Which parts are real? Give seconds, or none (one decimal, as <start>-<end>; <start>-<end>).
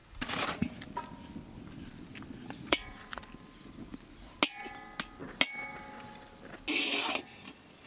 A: 0.8-2.4; 3.2-7.9